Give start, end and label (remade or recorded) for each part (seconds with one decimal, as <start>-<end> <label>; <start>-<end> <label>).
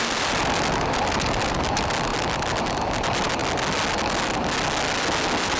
0.0-5.6 recorded